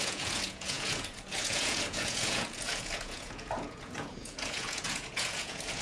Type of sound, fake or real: fake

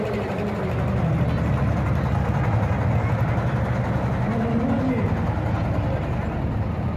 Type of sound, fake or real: real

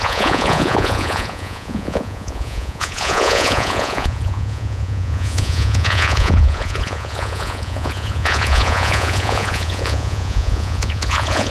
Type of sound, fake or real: fake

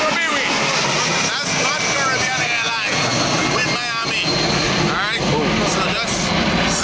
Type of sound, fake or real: real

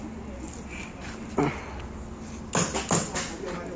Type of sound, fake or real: real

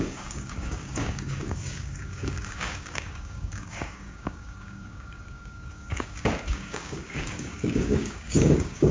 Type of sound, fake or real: fake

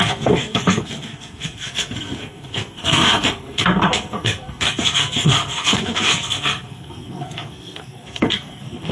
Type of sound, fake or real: fake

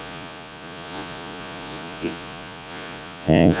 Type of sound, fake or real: fake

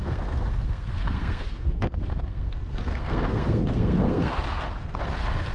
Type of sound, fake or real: fake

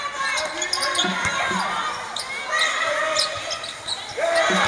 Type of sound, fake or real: real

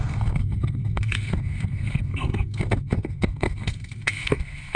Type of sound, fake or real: fake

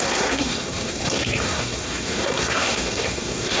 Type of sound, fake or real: fake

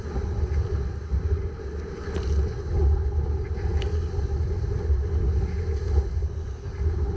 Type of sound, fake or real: real